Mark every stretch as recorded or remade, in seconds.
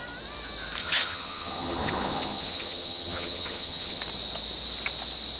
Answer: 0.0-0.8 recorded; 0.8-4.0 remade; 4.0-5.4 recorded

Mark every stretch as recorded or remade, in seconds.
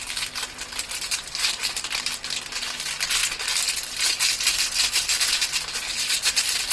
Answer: 0.0-6.7 recorded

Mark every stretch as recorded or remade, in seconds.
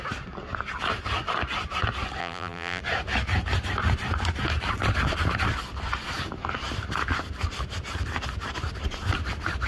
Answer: 0.0-2.2 recorded; 2.2-2.8 remade; 2.8-9.7 recorded